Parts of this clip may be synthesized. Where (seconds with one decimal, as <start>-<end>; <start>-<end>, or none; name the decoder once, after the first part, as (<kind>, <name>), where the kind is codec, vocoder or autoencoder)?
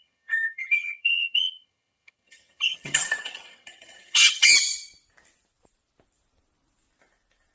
0.0-4.5 (vocoder, HiFi-GAN)